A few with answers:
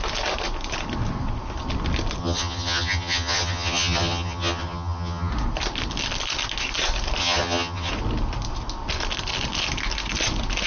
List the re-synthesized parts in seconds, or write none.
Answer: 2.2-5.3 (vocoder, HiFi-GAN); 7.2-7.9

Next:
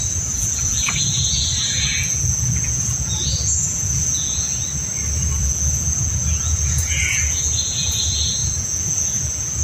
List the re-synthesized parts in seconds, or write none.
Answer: 0.0-4.5 (vocoder, Vocos); 5.4-9.6

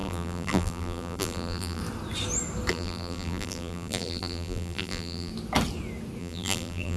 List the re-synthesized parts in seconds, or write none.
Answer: 0.0-1.8 (vocoder, BigVGAN v2); 2.7-5.3; 6.2-7.0

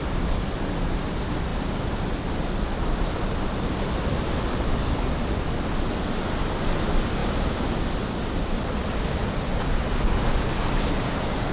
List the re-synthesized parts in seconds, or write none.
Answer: none

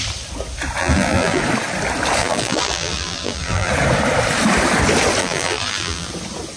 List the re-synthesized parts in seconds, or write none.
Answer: 0.8-1.4 (vocoder, BigVGAN v2); 2.2-3.7; 5.2-6.1

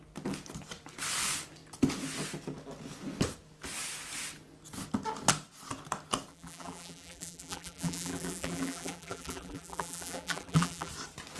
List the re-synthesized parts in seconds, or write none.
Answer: 6.3-10.9 (vocoder, BigVGAN v2)

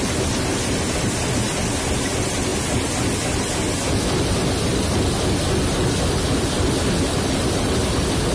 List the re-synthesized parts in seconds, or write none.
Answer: none

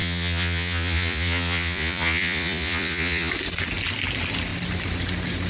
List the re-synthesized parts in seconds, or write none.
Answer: 0.0-3.3 (vocoder, Vocos)